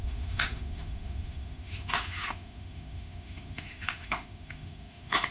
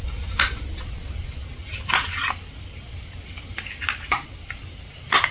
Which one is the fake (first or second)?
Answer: first